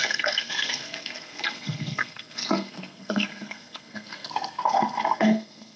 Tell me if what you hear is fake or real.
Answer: fake